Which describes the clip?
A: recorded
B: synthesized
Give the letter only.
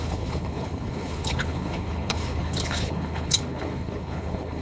B